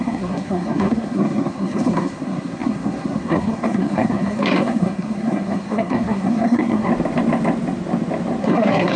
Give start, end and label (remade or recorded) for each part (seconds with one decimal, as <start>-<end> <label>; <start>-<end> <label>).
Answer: 0.0-6.9 remade; 6.9-8.4 recorded; 8.4-9.0 remade